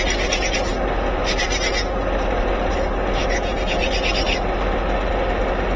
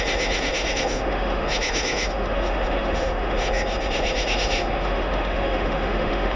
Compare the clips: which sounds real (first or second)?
first